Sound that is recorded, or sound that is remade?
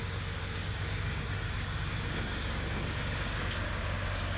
remade